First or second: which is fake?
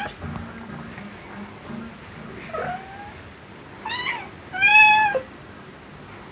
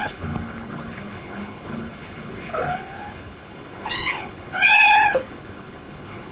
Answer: second